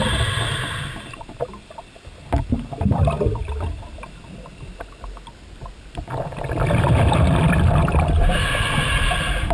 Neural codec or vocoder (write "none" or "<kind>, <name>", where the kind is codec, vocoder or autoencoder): none